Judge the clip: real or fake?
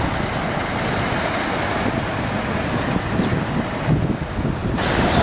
real